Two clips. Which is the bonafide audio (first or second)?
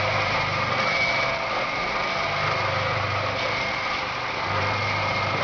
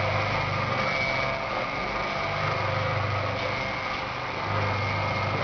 second